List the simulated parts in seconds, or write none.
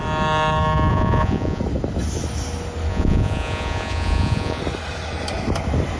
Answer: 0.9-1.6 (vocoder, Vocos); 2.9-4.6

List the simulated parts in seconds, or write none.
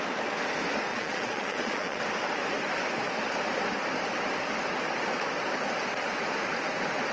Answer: 0.9-2.0 (vocoder, Vocos)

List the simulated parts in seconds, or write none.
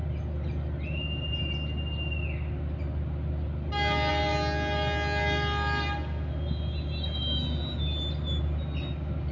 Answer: none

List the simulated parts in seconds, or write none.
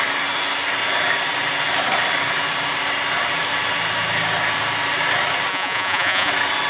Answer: 5.5-6.3 (vocoder, Vocos)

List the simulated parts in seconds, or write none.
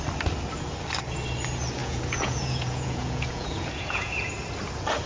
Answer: 1.8-4.3 (vocoder, Vocos)